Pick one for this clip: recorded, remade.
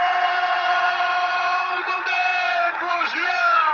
remade